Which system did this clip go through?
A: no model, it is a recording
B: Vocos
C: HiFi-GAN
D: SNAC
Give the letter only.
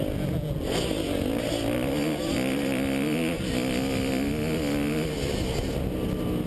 A